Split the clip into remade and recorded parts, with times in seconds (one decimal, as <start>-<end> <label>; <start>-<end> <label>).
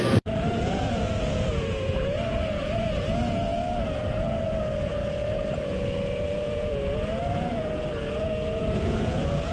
0.0-9.5 remade